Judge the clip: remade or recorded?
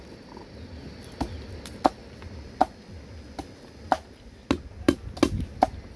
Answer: recorded